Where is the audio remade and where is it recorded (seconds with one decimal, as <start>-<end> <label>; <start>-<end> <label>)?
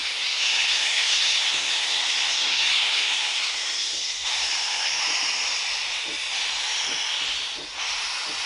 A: 0.0-5.0 remade; 5.0-8.5 recorded